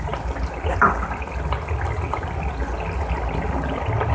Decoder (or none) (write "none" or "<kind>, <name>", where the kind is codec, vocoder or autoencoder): none